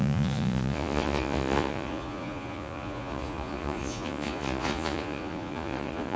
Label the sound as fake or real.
fake